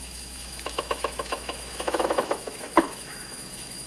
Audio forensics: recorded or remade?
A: remade